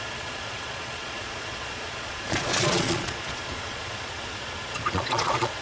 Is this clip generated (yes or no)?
yes